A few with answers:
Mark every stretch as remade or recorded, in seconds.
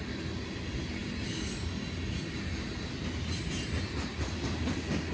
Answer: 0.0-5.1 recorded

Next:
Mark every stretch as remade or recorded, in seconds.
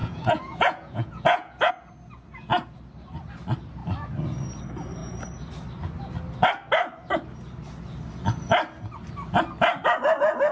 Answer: 0.0-1.7 remade; 1.7-10.5 recorded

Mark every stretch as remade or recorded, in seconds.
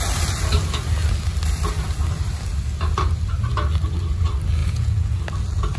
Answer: 0.0-4.6 recorded; 4.6-5.2 remade; 5.2-5.8 recorded